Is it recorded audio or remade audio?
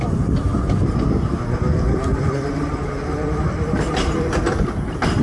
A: recorded